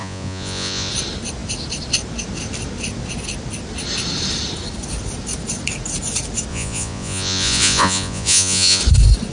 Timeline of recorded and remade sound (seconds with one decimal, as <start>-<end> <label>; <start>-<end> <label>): 0.0-0.9 remade; 0.9-6.5 recorded; 6.5-8.8 remade; 8.8-9.3 recorded